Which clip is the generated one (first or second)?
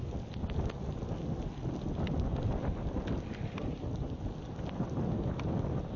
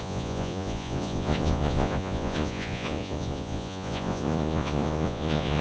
second